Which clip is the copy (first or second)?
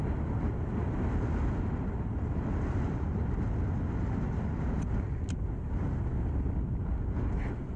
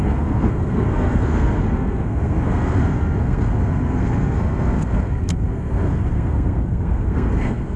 second